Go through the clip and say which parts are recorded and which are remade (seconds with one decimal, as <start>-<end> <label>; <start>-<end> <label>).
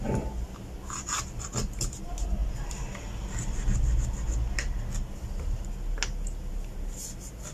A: 0.0-7.5 recorded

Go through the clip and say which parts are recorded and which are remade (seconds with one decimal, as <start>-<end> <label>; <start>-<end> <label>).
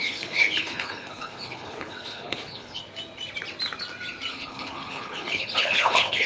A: 0.0-2.8 remade; 2.8-4.3 recorded; 4.3-6.3 remade